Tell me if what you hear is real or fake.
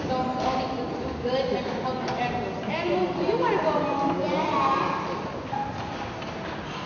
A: real